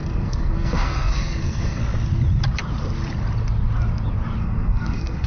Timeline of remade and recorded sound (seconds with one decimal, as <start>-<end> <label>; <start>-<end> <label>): 0.0-1.8 remade; 1.8-4.4 recorded; 4.4-5.3 remade